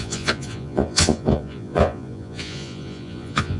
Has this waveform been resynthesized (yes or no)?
yes